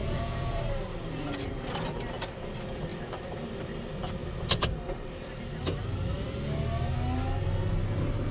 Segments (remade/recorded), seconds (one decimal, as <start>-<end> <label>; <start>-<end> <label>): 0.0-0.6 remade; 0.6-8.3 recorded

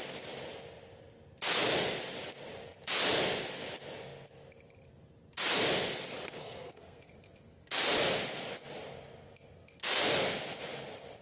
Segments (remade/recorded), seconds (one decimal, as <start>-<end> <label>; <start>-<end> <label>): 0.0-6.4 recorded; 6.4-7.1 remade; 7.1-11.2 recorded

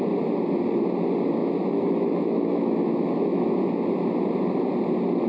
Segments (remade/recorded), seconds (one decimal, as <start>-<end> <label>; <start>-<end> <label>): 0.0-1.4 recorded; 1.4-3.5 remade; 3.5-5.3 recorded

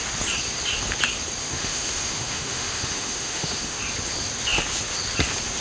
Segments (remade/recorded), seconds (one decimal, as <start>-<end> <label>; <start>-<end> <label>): 0.0-1.4 recorded; 1.4-3.8 remade; 3.8-5.6 recorded

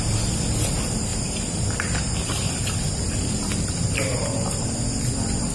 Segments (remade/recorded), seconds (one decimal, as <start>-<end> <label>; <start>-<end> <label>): 0.0-1.1 recorded; 1.1-3.8 remade; 3.8-5.5 recorded